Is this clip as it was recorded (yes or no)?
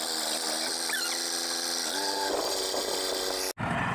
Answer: yes